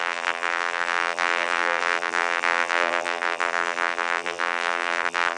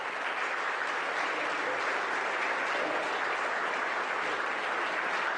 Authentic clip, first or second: second